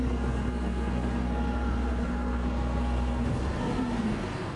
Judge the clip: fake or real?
fake